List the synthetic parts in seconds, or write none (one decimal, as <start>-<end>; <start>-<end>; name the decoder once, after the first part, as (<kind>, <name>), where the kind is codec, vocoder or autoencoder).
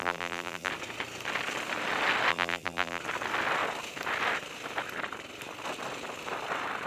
0.0-0.7 (vocoder, BigVGAN v2); 2.3-3.0